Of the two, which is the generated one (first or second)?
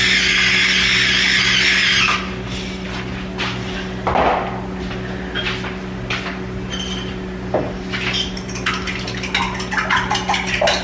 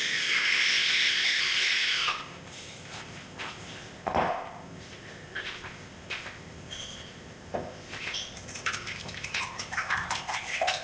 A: second